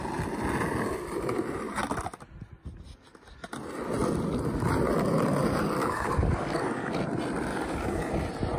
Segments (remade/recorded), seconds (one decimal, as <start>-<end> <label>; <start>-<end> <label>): 0.0-5.8 recorded; 5.8-7.0 remade; 7.0-7.5 recorded; 7.5-8.1 remade; 8.1-8.6 recorded